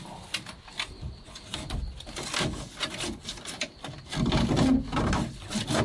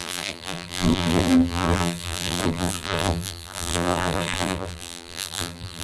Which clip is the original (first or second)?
first